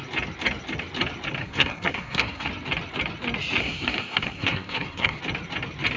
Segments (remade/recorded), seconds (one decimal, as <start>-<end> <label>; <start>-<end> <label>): 0.0-1.4 recorded; 1.4-2.5 remade; 2.5-3.6 recorded; 3.6-5.2 remade; 5.2-6.0 recorded